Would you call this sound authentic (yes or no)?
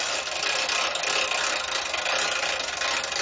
yes